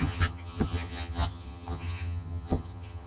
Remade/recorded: remade